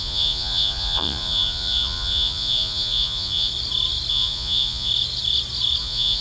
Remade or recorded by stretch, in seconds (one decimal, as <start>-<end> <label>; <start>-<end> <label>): 0.0-3.5 remade; 3.5-4.1 recorded; 4.1-4.9 remade; 4.9-5.8 recorded; 5.8-6.2 remade